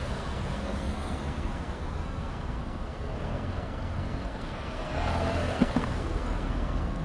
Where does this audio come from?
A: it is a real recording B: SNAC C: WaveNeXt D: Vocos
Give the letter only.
B